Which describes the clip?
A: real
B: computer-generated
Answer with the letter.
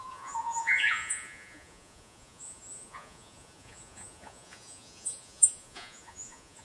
B